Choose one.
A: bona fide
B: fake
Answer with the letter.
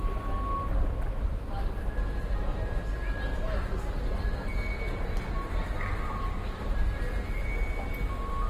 A